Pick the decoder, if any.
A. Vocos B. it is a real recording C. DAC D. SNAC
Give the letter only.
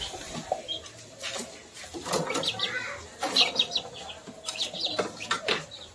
B